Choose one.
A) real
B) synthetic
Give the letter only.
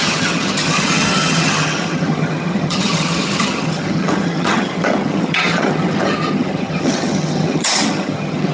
B